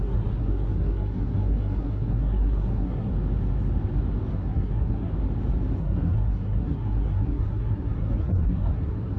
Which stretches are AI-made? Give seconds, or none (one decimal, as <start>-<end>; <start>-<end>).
0.0-3.1; 4.3-5.1; 5.8-9.2